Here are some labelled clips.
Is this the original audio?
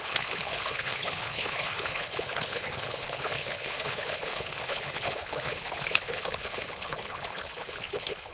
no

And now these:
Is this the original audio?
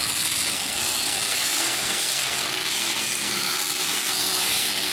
no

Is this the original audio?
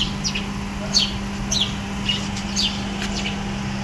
yes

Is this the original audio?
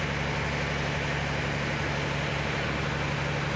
yes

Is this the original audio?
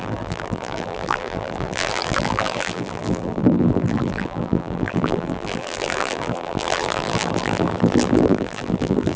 no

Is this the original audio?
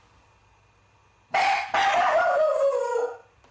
yes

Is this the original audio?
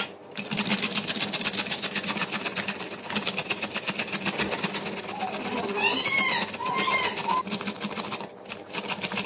yes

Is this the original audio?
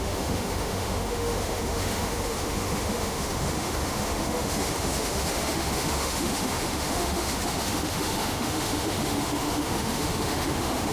no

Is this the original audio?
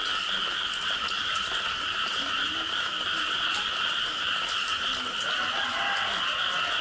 yes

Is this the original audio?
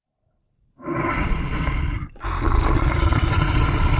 yes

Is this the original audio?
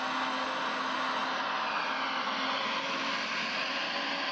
yes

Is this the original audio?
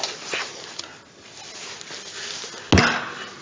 yes